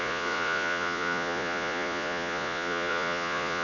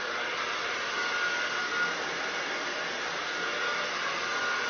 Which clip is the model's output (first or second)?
first